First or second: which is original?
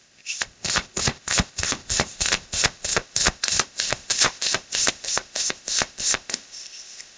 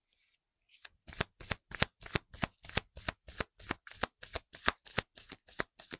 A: second